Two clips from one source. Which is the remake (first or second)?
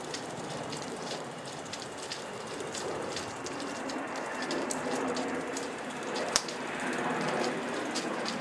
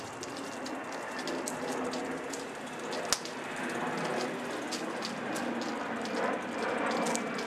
first